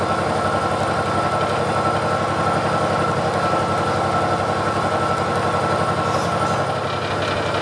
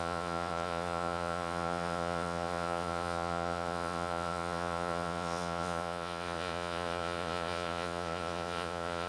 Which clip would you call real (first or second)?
first